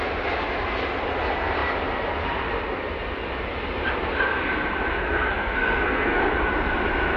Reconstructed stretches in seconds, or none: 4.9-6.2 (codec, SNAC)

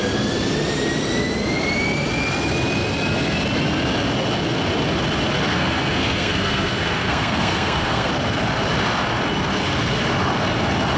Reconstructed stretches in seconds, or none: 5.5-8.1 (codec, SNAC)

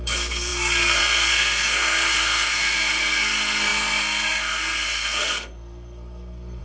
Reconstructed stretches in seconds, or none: 0.0-6.6 (codec, SNAC)